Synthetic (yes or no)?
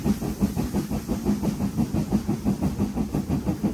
no